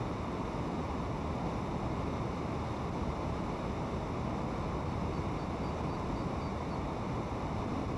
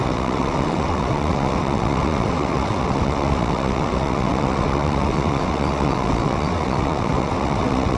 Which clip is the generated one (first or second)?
second